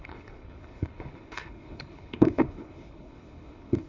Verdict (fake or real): fake